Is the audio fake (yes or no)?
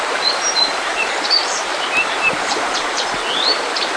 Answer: yes